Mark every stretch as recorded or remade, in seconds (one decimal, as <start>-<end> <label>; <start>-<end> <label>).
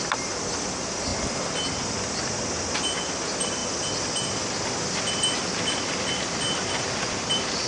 0.0-7.7 recorded